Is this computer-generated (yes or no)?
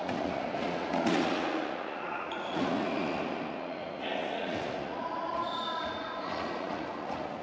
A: yes